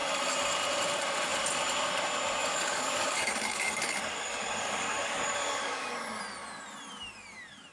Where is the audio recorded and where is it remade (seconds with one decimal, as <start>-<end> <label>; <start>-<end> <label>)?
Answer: 0.0-2.5 recorded; 2.5-6.2 remade; 6.2-7.7 recorded